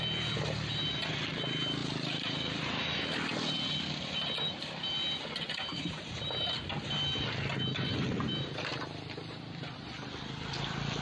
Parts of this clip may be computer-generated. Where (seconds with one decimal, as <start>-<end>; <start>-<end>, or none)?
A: 1.8-3.0; 5.7-6.5; 8.7-9.4